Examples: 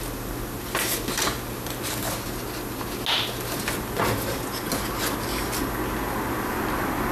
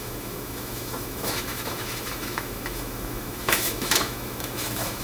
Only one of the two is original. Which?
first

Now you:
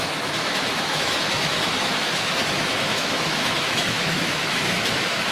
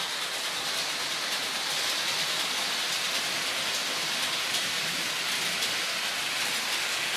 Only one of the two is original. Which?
second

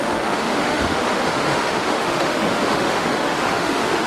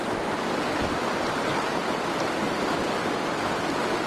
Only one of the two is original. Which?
second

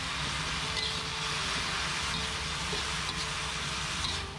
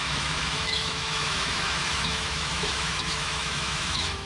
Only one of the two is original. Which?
first